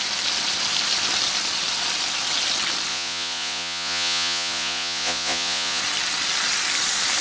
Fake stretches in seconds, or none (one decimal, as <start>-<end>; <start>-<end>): 2.9-5.8